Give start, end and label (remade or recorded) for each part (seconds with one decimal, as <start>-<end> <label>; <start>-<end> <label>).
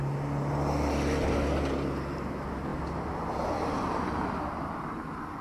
0.0-5.4 recorded